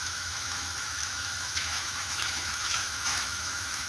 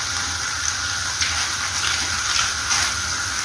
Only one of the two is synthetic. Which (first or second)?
first